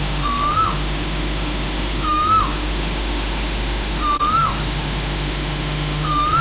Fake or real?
fake